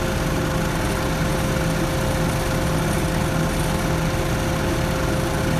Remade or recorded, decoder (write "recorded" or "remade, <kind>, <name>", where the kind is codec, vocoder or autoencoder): recorded